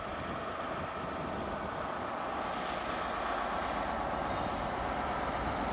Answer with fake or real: real